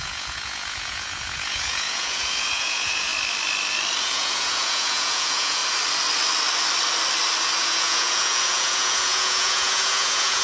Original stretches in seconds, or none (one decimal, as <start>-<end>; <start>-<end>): 3.1-4.0; 5.6-7.6